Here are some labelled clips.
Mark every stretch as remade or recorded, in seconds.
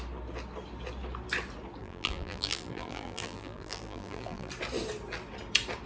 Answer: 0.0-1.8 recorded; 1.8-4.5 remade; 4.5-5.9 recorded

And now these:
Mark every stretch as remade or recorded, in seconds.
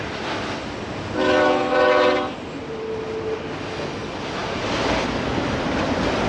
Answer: 0.0-4.4 recorded; 4.4-5.1 remade; 5.1-6.3 recorded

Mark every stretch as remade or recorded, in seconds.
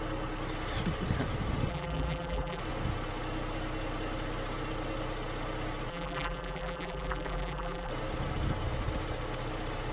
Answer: 0.0-1.7 recorded; 1.7-2.6 remade; 2.6-5.9 recorded; 5.9-7.9 remade; 7.9-9.9 recorded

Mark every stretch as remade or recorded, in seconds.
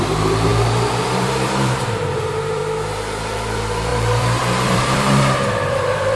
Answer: 0.0-2.6 remade; 2.6-3.2 recorded; 3.2-6.2 remade